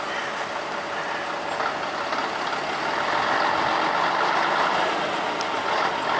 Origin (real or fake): real